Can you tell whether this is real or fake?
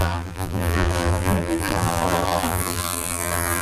fake